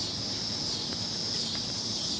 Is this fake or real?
real